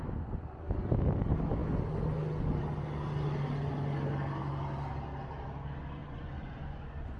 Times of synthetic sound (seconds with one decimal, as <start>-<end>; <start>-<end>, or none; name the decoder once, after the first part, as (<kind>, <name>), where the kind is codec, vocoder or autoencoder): 6.0-7.2 (vocoder, Vocos)